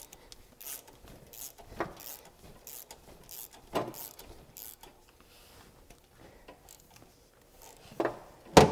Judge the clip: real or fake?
real